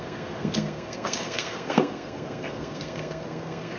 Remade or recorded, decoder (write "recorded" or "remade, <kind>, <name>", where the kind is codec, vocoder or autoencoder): remade, codec, SNAC